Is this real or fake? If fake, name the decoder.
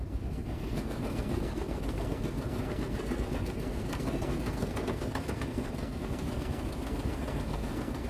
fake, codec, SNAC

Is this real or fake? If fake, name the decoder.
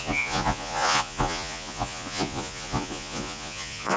fake, vocoder, Vocos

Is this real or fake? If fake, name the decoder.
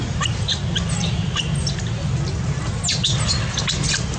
real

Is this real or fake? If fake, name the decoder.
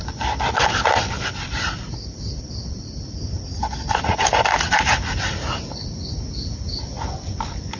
real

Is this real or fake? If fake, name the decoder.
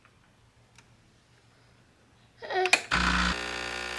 real